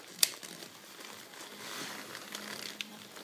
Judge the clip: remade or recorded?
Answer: remade